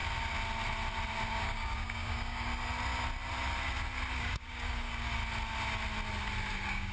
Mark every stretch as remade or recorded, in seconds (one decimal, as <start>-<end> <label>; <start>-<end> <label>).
0.0-1.3 recorded; 1.3-2.5 remade; 2.5-4.1 recorded; 4.1-5.2 remade; 5.2-6.5 recorded; 6.5-6.9 remade